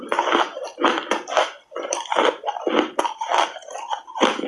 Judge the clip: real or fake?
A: real